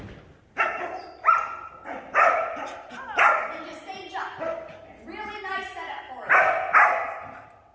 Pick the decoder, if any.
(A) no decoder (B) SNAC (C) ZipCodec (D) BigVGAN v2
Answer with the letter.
A